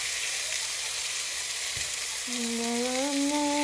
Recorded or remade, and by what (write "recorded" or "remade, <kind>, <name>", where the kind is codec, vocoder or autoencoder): recorded